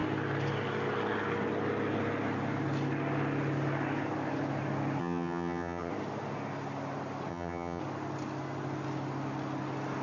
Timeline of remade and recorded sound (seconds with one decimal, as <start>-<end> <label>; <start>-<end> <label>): 0.0-5.0 recorded; 5.0-5.9 remade; 5.9-7.3 recorded; 7.3-7.8 remade; 7.8-10.0 recorded